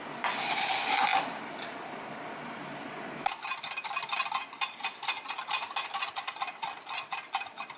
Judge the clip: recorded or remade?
recorded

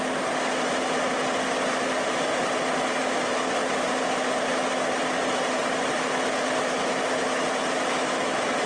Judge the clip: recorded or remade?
recorded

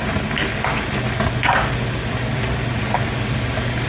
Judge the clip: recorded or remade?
recorded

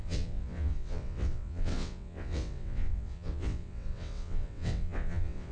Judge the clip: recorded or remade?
remade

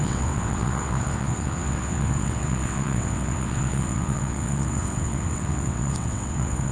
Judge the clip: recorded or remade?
remade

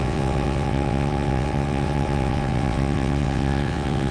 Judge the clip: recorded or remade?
remade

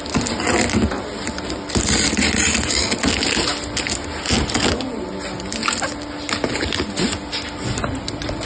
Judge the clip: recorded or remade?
recorded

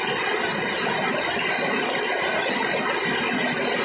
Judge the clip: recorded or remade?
recorded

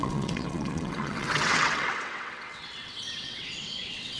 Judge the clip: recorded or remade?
remade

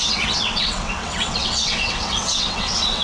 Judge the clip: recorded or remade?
remade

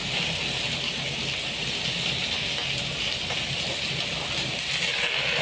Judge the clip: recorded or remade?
recorded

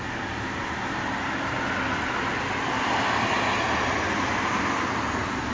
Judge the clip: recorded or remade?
recorded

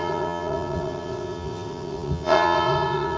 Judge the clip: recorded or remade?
remade